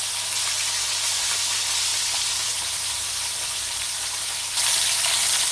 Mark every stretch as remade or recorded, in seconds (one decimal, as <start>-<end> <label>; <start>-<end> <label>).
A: 0.0-5.5 recorded